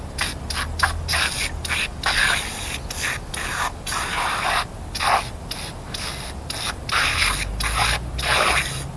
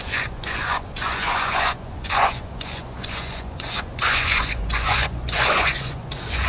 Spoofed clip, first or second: second